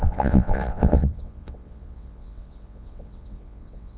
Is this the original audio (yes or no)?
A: no